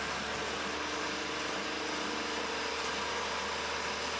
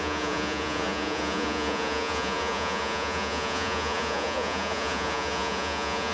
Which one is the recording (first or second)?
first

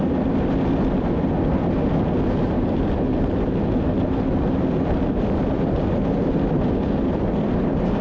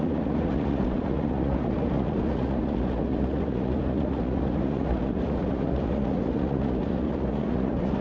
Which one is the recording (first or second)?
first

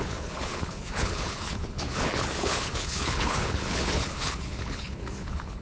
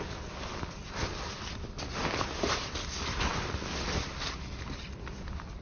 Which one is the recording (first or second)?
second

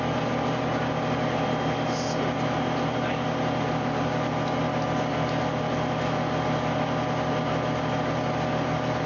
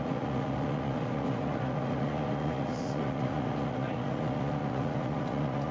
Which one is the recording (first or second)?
first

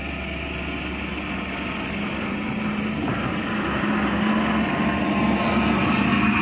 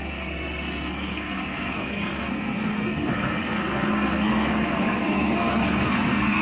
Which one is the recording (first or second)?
first